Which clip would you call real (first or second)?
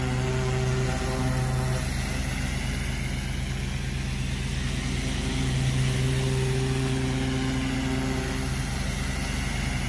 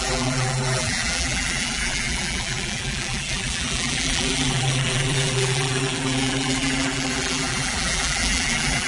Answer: first